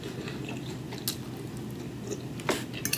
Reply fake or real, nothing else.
real